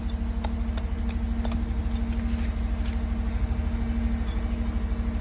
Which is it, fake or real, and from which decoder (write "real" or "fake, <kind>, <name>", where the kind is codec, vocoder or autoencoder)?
real